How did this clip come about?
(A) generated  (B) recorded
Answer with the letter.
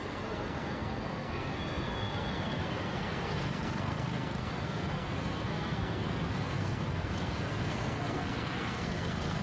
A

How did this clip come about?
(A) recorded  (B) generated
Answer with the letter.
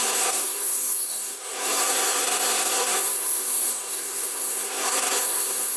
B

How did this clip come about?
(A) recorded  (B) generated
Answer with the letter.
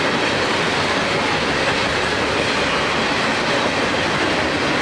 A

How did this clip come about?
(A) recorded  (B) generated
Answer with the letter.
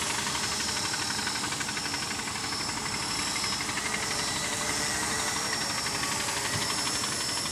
A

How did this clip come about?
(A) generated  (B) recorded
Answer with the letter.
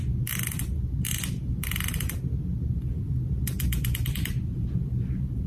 B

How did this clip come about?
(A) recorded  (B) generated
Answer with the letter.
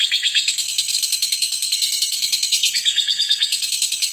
B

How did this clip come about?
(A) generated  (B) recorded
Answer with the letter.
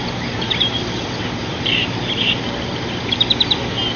B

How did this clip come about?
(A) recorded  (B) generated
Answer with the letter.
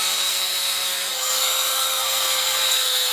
B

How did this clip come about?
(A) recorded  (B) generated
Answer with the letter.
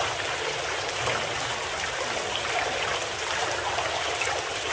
A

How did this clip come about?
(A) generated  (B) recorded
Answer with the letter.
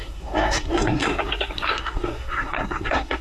A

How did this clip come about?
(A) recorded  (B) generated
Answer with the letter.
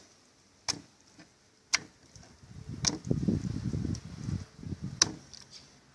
A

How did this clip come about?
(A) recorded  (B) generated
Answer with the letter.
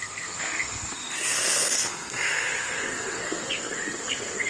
B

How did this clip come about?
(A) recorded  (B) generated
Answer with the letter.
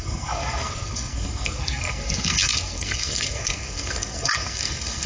B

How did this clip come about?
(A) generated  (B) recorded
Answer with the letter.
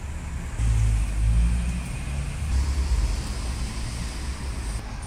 B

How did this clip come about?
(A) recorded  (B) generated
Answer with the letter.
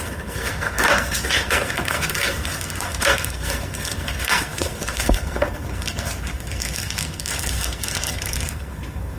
B